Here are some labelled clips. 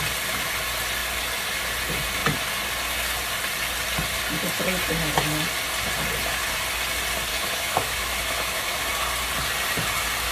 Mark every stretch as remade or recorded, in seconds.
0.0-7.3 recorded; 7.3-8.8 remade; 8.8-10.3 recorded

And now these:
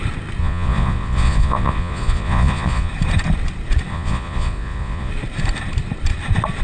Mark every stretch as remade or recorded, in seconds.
0.0-0.4 recorded; 0.4-2.9 remade; 2.9-3.9 recorded; 3.9-5.1 remade; 5.1-6.6 recorded

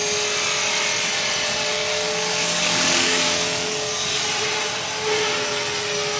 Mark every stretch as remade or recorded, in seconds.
0.0-1.7 recorded; 1.7-4.2 remade; 4.2-6.2 recorded

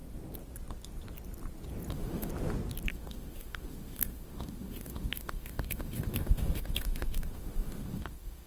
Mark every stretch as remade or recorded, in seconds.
0.0-1.9 recorded; 1.9-2.3 remade; 2.3-2.9 recorded; 2.9-8.5 remade

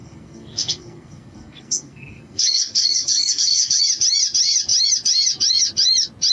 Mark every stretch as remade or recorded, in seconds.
0.0-3.8 remade; 3.8-6.3 recorded